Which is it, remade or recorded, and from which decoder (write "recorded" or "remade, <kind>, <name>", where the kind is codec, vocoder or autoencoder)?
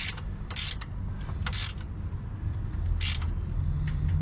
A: recorded